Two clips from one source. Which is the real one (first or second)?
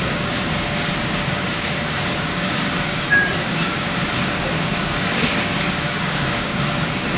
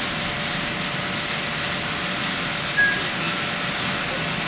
second